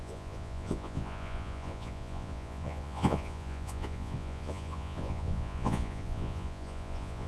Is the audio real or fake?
fake